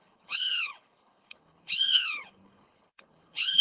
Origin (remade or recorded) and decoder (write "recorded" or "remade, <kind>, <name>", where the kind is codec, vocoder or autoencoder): remade, codec, HILCodec